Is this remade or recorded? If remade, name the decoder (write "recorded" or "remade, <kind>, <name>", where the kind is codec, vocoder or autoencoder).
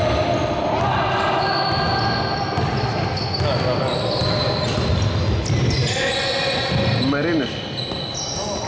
recorded